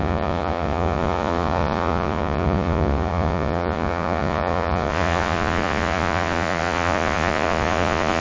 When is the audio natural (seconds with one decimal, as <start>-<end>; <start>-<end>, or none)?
none